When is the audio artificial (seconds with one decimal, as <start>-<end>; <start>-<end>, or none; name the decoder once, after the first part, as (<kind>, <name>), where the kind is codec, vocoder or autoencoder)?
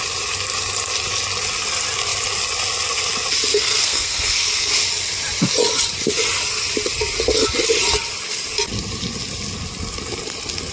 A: 3.5-4.7 (codec, SNAC)